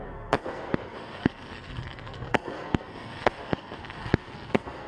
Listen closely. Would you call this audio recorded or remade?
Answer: remade